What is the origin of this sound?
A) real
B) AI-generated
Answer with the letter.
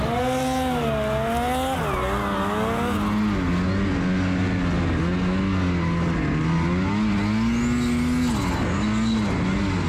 A